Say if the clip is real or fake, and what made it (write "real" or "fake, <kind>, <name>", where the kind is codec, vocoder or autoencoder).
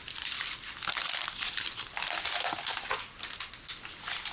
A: real